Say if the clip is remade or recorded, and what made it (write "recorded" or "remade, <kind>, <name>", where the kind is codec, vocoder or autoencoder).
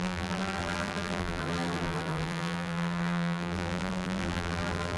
remade, vocoder, BigVGAN v2